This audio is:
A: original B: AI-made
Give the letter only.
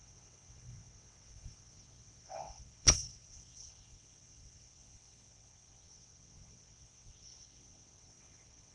B